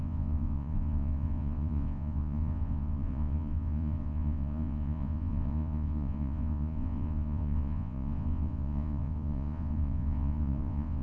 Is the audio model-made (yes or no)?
yes